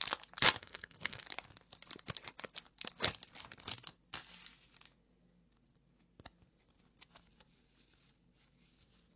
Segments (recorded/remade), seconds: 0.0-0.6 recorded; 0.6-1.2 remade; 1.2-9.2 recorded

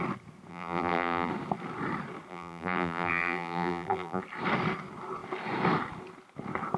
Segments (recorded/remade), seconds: 0.0-0.5 recorded; 0.5-1.3 remade; 1.3-2.3 recorded; 2.3-4.2 remade; 4.2-6.8 recorded

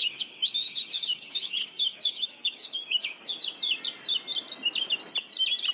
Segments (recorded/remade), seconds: 0.0-3.4 remade; 3.4-5.7 recorded

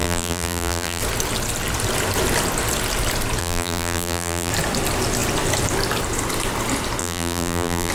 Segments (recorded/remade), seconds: 0.0-1.0 remade; 1.0-3.4 recorded; 3.4-4.5 remade; 4.5-7.0 recorded; 7.0-7.9 remade